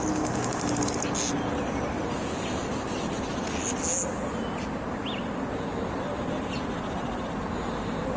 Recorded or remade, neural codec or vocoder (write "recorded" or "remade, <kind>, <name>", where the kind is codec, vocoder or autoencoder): recorded